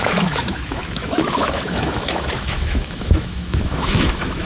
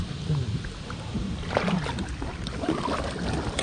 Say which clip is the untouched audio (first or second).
second